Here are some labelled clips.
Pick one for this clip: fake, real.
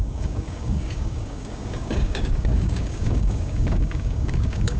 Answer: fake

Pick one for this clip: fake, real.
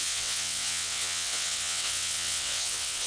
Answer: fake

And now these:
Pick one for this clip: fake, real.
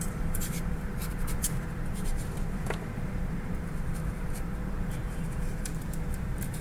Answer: fake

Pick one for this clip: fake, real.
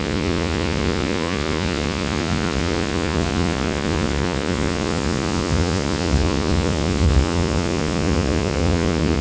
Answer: fake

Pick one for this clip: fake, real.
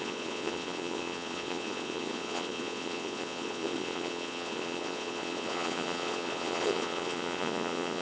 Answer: fake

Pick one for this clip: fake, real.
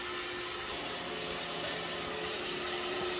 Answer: real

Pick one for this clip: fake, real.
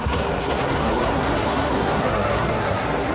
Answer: fake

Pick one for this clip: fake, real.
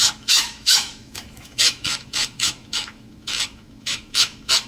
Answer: fake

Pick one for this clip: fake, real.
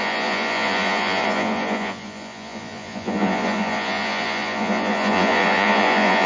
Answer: fake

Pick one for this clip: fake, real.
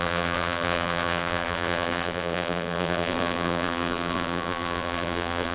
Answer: fake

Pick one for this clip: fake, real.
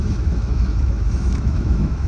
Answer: fake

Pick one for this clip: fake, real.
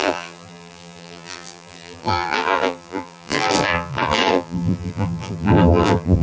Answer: fake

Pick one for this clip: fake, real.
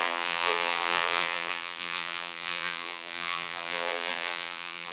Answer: fake